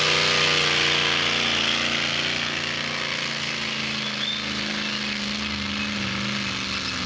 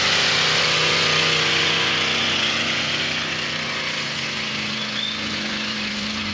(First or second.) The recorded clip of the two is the first